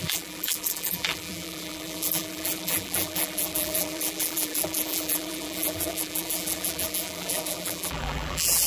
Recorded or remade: remade